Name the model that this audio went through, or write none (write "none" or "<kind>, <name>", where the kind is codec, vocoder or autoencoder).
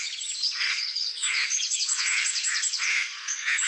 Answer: codec, HILCodec